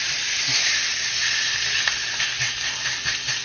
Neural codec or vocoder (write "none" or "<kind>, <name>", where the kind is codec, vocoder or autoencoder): none